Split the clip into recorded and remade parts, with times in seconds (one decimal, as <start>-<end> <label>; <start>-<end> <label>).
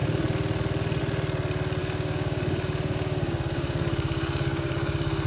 0.0-1.8 recorded; 1.8-5.3 remade